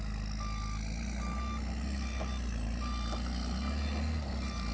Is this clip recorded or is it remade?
recorded